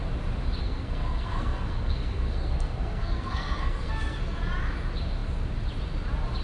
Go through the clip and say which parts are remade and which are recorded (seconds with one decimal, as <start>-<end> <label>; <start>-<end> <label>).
0.0-0.6 recorded; 0.6-4.4 remade; 4.4-6.4 recorded